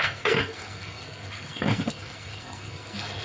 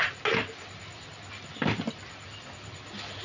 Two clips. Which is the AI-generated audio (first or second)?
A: first